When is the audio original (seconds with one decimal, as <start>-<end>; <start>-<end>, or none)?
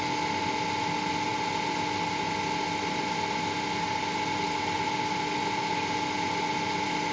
0.0-7.1